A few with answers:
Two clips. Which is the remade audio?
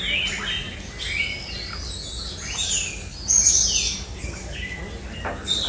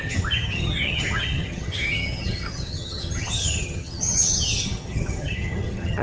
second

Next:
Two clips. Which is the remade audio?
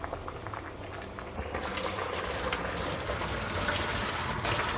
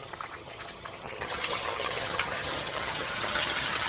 second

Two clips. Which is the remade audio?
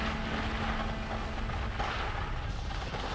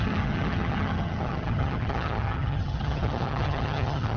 second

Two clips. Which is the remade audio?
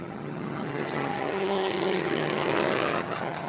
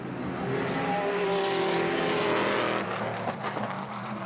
first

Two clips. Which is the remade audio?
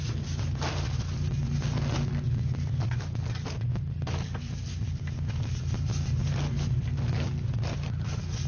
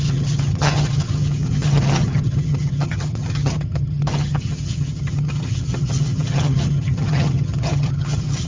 second